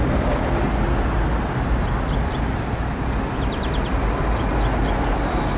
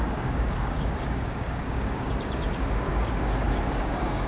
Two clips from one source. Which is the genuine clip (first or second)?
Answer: first